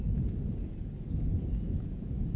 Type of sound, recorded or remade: remade